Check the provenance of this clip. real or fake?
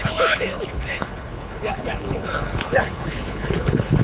fake